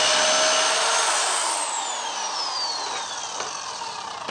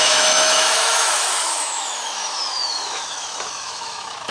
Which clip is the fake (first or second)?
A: second